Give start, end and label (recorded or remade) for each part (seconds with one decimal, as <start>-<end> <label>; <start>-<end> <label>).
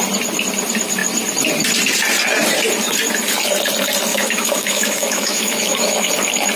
0.0-4.1 recorded; 4.1-6.1 remade; 6.1-6.6 recorded